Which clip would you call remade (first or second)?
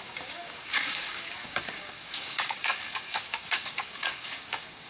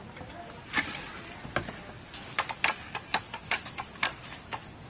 first